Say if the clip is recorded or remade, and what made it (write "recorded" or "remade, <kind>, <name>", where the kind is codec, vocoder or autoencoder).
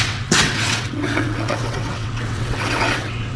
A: remade, vocoder, WaveNeXt